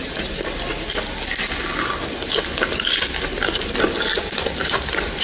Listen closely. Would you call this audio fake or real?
real